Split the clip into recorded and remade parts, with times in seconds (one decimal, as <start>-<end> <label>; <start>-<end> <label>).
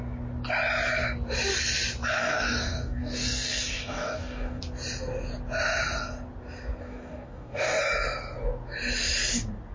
0.0-2.2 recorded; 2.2-4.6 remade; 4.6-6.8 recorded; 6.8-7.8 remade; 7.8-9.7 recorded